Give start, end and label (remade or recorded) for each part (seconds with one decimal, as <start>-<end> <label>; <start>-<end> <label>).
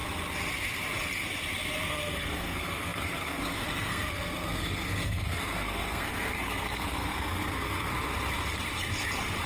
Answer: 0.0-1.9 recorded; 1.9-7.9 remade; 7.9-9.5 recorded